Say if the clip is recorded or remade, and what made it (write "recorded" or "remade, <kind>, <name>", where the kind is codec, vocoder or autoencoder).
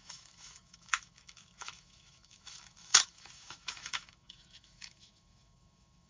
remade, autoencoder, DAC-VAE